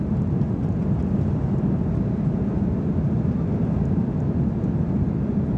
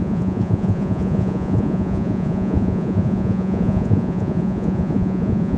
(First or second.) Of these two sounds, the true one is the first